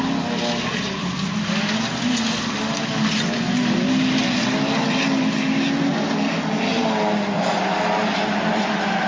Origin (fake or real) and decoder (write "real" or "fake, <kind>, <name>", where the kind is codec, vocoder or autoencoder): real